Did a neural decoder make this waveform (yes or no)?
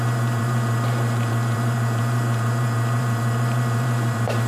yes